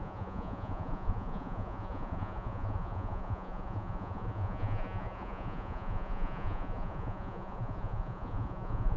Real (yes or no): no